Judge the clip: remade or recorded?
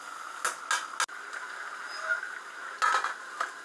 recorded